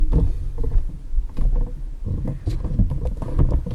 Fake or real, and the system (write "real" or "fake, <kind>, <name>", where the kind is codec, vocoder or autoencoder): real